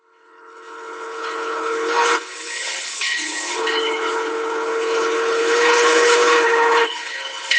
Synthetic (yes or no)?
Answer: yes